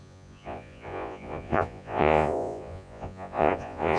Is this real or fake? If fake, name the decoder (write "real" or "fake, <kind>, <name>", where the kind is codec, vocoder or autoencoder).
fake, vocoder, Vocos